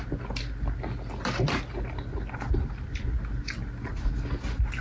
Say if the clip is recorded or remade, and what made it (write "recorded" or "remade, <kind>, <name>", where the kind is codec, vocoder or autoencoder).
recorded